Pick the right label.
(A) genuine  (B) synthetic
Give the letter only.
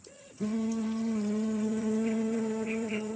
B